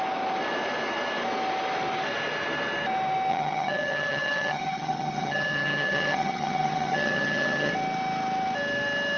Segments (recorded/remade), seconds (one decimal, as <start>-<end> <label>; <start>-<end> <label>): 0.0-3.3 recorded; 3.3-7.7 remade; 7.7-9.2 recorded